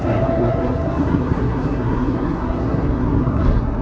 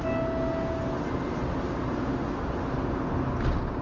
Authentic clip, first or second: second